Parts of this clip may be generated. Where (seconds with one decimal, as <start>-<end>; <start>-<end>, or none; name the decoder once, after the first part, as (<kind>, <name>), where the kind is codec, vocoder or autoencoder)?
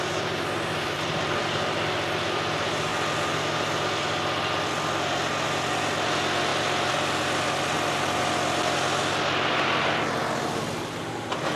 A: none